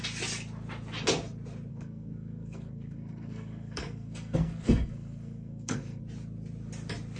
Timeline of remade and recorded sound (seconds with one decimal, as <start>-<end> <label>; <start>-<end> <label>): 0.0-1.7 recorded; 1.7-6.0 remade; 6.0-7.2 recorded